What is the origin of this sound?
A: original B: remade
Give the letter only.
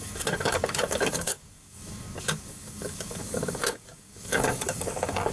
B